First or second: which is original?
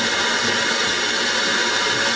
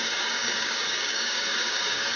first